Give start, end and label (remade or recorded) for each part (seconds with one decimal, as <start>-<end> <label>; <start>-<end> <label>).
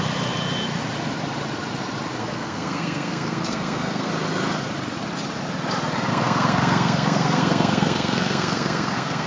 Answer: 0.0-2.2 recorded; 2.2-4.1 remade; 4.1-6.1 recorded; 6.1-9.3 remade